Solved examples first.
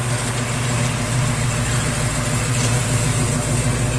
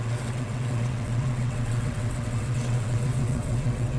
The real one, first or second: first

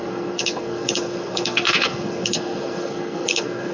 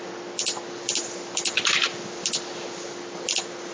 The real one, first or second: second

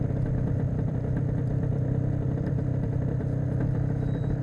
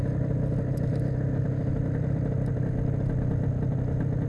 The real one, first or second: second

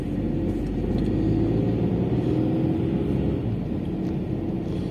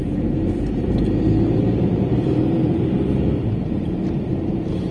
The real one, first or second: first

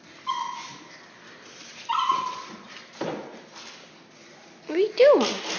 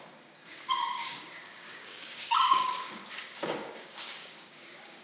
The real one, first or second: first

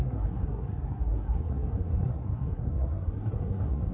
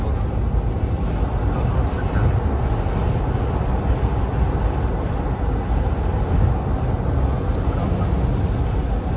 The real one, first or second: second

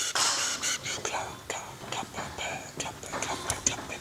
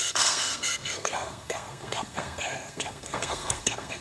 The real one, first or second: first